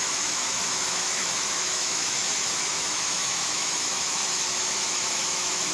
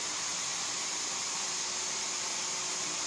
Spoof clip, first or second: first